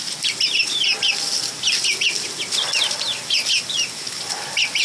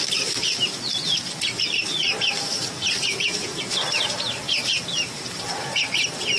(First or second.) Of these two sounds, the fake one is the second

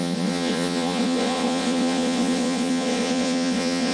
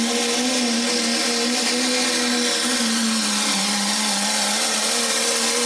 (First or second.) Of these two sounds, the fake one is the first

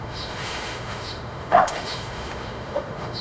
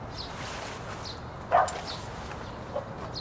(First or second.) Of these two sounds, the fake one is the first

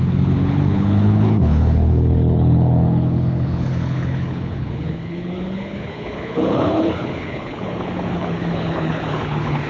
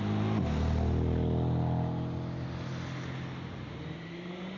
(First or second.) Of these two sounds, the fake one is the first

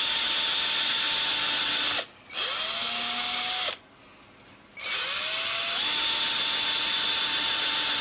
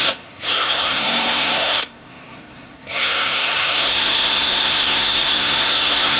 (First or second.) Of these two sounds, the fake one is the second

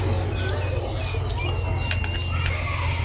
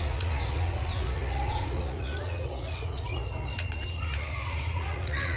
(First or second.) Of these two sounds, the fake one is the second